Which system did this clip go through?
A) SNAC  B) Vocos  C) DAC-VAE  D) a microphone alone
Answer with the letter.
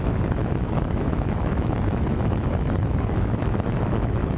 C